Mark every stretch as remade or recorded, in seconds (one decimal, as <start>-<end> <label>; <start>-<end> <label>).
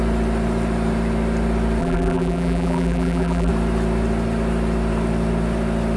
0.0-1.8 recorded; 1.8-3.5 remade; 3.5-6.0 recorded